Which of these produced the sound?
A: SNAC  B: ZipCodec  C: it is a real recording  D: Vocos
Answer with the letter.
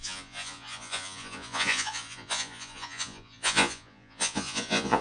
D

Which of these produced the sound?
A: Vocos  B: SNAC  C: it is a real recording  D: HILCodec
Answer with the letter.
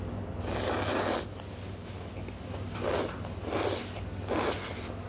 C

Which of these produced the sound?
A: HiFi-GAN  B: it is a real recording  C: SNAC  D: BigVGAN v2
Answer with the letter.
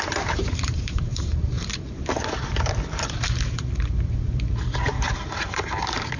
D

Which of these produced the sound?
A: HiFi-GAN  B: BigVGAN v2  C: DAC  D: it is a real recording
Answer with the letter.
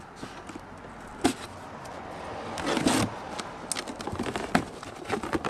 D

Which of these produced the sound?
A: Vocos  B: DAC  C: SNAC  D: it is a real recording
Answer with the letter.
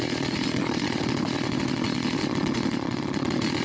A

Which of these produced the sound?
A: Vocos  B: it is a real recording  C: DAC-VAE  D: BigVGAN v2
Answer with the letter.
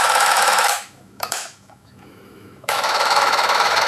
C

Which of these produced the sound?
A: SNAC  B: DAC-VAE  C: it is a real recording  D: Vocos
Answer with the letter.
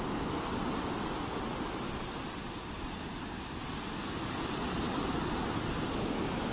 C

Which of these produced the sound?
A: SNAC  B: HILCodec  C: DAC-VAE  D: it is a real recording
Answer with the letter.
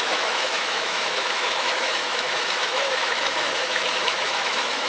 C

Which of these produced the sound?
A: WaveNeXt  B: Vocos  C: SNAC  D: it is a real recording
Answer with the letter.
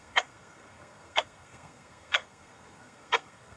C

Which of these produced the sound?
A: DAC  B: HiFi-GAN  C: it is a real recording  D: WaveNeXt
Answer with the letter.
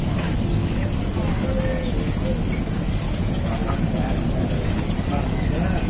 C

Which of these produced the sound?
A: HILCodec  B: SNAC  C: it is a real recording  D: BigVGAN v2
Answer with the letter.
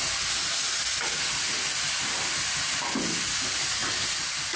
C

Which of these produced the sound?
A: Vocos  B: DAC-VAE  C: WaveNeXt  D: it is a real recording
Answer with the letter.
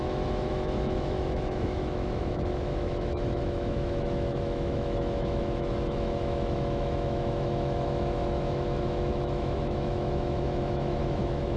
B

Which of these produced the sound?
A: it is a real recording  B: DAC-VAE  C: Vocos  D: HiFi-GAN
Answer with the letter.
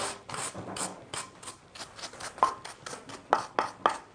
A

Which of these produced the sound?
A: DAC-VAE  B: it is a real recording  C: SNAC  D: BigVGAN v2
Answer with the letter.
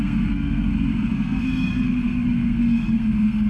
C